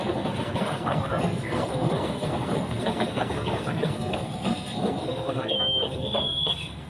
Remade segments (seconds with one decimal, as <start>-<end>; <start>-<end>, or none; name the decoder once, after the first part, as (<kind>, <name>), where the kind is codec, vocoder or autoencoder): 0.0-6.9 (codec, SNAC)